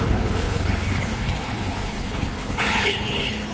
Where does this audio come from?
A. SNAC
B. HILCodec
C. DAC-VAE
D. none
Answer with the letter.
B